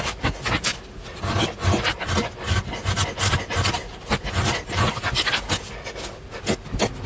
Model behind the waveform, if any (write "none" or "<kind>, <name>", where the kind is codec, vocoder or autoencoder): none